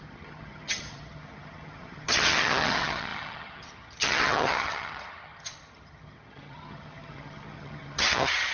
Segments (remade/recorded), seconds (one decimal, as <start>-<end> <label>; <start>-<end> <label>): 0.0-8.5 remade